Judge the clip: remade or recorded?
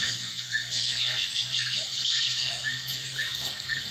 remade